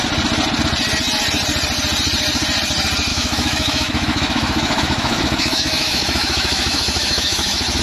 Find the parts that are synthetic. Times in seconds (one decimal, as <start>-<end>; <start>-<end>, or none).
3.1-7.8